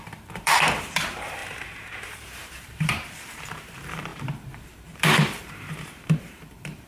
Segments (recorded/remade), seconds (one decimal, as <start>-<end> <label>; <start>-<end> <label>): 0.0-6.9 remade